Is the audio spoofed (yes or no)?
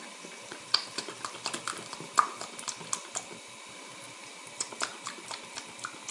no